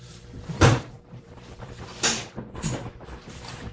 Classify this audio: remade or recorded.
remade